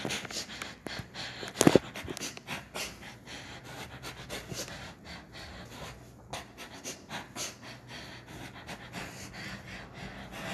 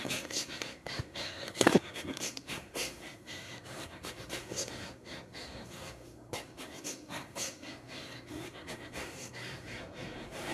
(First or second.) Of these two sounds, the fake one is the second